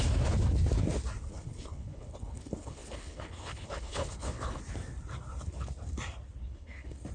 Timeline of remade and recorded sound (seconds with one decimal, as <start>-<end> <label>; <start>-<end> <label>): 0.0-1.3 recorded; 1.3-4.6 remade; 4.6-6.4 recorded; 6.4-7.1 remade